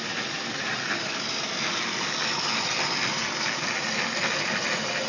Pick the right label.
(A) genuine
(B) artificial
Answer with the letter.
A